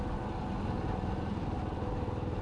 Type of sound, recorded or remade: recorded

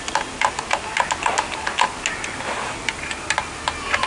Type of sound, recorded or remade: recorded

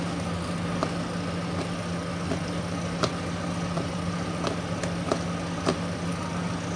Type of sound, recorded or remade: recorded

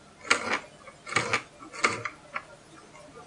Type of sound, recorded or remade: recorded